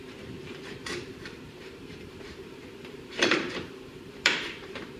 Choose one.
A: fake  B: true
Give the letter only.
A